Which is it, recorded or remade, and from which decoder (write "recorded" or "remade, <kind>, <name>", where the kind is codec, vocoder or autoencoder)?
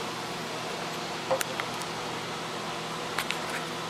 recorded